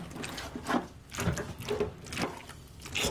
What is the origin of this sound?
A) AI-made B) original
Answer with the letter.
B